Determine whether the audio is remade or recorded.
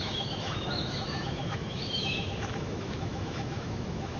remade